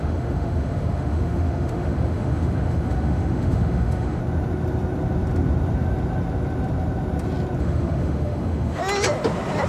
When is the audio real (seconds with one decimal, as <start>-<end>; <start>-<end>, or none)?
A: 4.2-7.6; 8.8-9.7